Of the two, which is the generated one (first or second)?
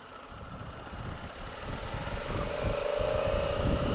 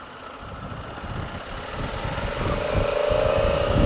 first